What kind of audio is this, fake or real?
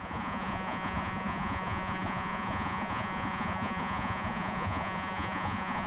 fake